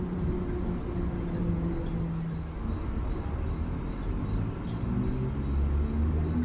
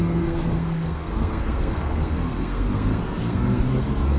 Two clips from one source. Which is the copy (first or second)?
second